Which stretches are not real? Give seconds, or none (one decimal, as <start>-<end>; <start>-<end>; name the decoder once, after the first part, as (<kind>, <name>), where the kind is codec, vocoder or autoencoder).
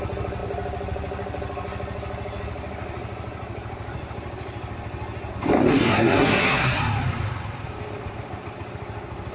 5.7-6.8 (codec, SNAC)